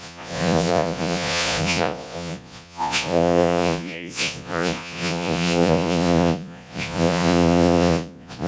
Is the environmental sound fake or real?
fake